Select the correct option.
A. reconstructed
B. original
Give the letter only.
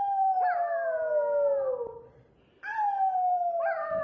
B